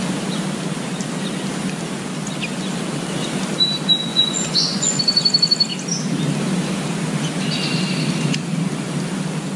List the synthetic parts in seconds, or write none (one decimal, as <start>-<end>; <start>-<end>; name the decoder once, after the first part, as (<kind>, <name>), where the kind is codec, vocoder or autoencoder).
4.1-5.0 (vocoder, Vocos)